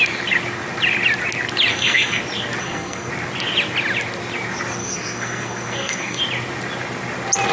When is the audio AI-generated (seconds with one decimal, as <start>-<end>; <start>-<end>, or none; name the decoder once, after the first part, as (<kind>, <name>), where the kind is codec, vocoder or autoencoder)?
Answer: 1.7-2.2 (codec, SNAC); 2.6-3.1; 4.8-6.2